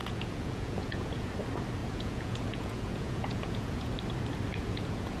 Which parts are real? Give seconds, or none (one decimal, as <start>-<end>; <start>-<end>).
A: 1.3-1.8; 3.9-4.5